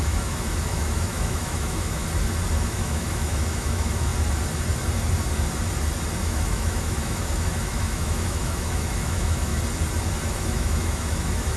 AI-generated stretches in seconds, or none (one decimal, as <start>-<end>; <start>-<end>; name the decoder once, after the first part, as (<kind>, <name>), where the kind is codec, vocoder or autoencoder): 0.0-2.0 (autoencoder, DAC-VAE); 2.5-4.1; 6.2-9.5; 10.3-11.6